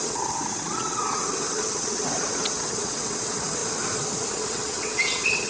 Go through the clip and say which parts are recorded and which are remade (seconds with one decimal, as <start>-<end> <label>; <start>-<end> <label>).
0.0-3.6 remade; 3.6-4.3 recorded; 4.3-5.5 remade